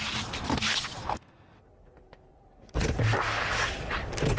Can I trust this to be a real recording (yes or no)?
yes